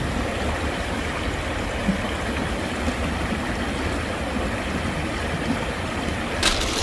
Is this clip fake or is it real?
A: real